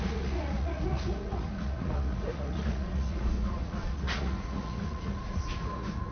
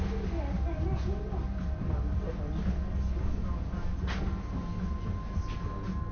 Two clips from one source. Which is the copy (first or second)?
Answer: first